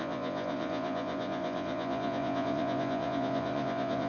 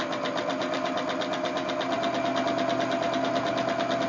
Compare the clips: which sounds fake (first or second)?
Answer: first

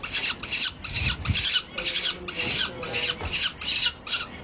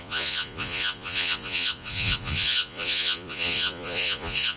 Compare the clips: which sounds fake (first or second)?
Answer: second